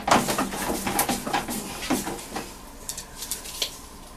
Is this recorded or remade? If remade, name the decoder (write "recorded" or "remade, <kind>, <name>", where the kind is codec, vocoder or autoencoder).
recorded